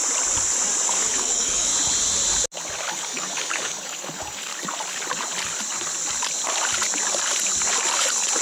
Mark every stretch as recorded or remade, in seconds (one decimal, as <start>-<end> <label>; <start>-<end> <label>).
0.0-0.9 recorded; 0.9-1.7 remade; 1.7-2.9 recorded; 2.9-4.5 remade; 4.5-8.4 recorded

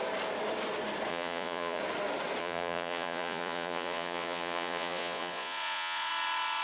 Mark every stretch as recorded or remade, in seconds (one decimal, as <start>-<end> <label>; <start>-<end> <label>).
0.0-1.1 recorded; 1.1-1.8 remade; 1.8-2.4 recorded; 2.4-6.1 remade; 6.1-6.6 recorded

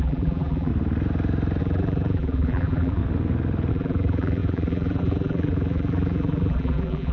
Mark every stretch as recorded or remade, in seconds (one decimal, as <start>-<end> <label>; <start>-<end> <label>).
0.0-0.7 remade; 0.7-1.6 recorded; 1.6-3.0 remade; 3.0-3.7 recorded; 3.7-7.1 remade

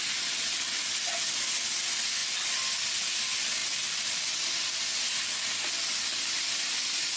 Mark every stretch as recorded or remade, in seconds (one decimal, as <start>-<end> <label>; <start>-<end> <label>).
0.0-7.2 recorded

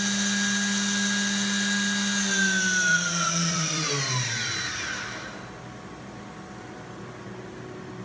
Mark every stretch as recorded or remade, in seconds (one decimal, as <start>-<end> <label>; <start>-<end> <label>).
0.0-2.9 recorded; 2.9-3.9 remade; 3.9-8.0 recorded

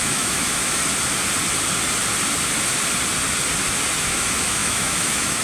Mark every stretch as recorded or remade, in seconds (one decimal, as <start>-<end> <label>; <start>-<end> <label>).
0.0-0.8 remade; 0.8-4.0 recorded; 4.0-5.4 remade

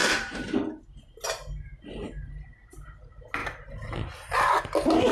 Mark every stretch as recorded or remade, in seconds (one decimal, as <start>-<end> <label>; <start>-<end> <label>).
0.0-0.6 remade; 0.6-5.1 recorded